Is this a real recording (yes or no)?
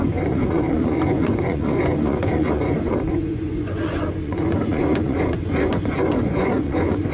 no